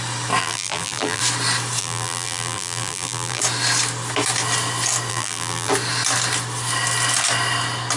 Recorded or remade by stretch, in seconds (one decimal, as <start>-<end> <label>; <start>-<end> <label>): 0.0-0.4 recorded; 0.4-1.2 remade; 1.2-1.8 recorded; 1.8-3.4 remade; 3.4-5.1 recorded; 5.1-5.7 remade; 5.7-8.0 recorded